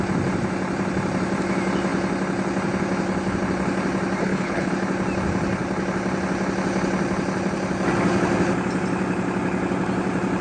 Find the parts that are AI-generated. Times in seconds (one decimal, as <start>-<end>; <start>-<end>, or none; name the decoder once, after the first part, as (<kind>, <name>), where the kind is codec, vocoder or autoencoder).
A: 4.2-4.7 (codec, HILCodec)